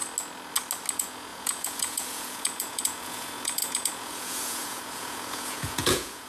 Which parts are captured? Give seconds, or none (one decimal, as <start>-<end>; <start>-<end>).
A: 0.0-0.9